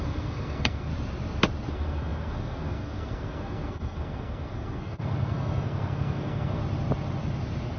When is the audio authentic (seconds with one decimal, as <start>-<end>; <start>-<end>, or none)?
0.9-1.7; 6.6-7.8